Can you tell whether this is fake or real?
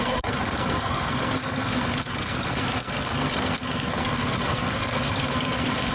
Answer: fake